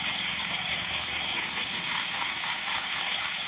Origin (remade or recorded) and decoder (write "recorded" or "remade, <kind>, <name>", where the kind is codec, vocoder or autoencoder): remade, codec, DAC